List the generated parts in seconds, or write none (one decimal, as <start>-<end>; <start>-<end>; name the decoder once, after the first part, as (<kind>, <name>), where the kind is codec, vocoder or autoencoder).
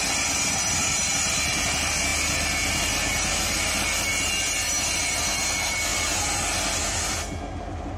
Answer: none